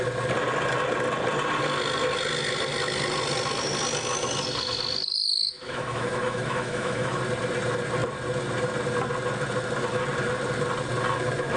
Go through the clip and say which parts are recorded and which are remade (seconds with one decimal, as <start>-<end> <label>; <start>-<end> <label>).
0.0-5.4 recorded; 5.4-7.2 remade; 7.2-11.6 recorded